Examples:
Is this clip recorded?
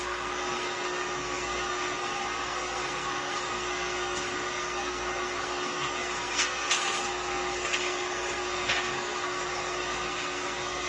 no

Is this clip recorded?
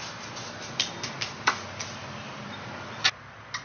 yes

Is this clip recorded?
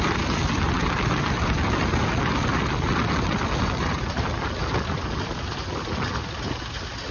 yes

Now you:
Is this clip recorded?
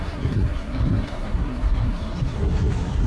no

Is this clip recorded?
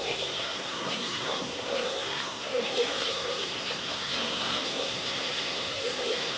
no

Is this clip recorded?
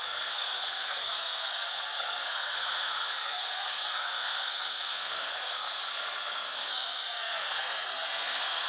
no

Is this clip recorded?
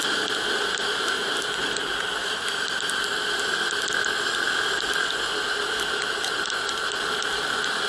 yes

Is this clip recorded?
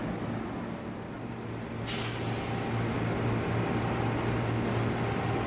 yes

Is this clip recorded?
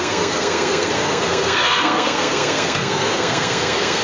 no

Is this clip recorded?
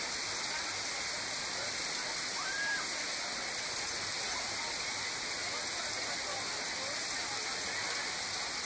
yes